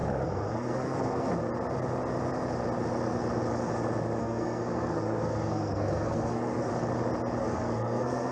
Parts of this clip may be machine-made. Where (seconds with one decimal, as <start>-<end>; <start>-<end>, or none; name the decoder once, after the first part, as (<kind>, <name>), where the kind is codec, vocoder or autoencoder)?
0.0-1.3 (codec, SNAC); 4.2-6.7; 7.4-8.3